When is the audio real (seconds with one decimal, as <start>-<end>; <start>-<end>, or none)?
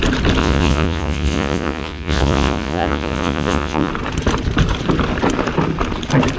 0.0-0.4; 3.9-6.4